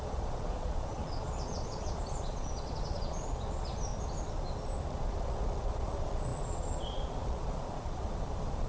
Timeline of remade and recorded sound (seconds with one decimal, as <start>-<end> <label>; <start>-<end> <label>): 0.0-3.9 remade; 3.9-4.9 recorded; 4.9-8.7 remade